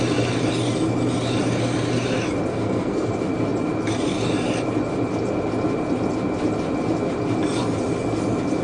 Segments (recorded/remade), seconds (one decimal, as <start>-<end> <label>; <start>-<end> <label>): 0.0-2.5 recorded; 2.5-3.1 remade; 3.1-8.6 recorded